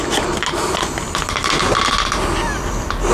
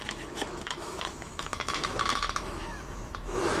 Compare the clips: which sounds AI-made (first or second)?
second